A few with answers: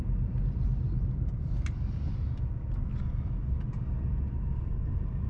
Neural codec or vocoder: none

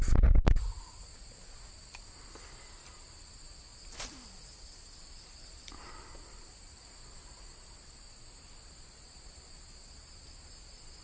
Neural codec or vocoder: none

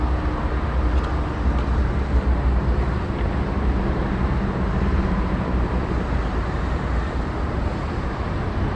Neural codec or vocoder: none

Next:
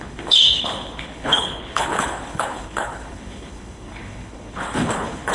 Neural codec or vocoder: codec, HILCodec